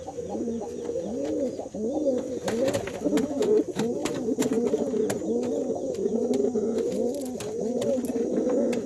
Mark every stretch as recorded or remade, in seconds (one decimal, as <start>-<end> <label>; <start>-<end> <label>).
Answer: 0.0-8.9 recorded